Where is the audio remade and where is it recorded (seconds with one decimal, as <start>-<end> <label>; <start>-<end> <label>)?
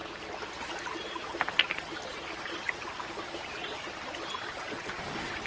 0.0-5.5 recorded